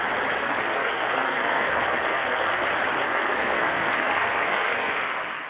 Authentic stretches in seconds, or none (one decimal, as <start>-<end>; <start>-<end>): 0.0-0.4; 2.6-3.0